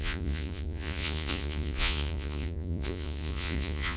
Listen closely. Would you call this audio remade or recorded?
remade